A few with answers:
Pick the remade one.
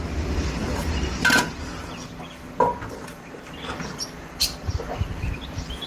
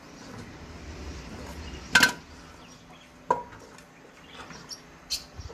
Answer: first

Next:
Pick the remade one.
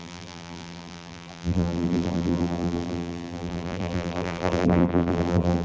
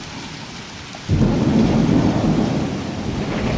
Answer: first